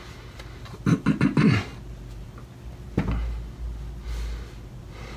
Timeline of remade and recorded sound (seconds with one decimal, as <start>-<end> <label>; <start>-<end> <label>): 0.0-5.2 recorded